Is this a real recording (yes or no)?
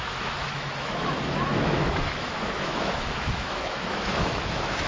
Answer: no